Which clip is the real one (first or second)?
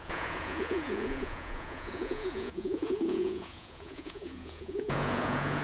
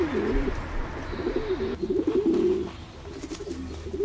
second